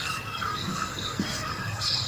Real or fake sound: fake